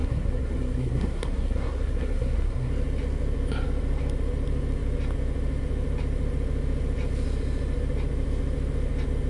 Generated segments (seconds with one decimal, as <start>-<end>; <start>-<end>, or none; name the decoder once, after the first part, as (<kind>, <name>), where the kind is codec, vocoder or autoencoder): 0.0-2.7 (codec, SNAC)